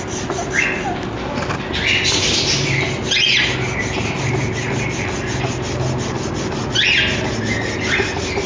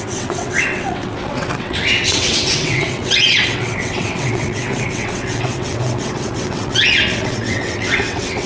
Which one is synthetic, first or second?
second